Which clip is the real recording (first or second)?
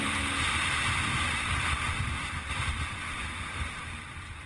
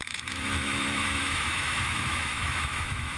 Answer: first